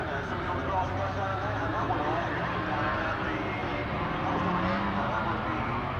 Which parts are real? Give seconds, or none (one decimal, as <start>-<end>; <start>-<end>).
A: 0.0-1.3; 2.0-6.0